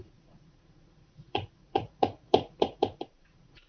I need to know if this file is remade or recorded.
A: remade